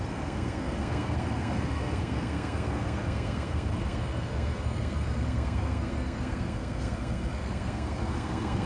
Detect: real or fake fake